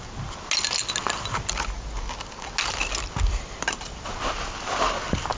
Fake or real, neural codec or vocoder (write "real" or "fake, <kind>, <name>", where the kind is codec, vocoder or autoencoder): real